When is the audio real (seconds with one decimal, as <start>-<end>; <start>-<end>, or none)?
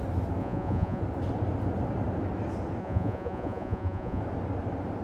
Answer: 0.0-0.4; 1.0-2.8; 4.2-5.0